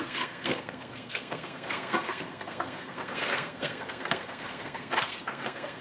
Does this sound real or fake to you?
fake